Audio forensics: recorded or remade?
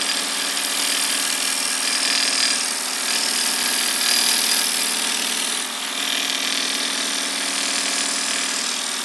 recorded